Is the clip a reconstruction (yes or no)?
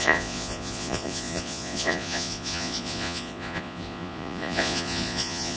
yes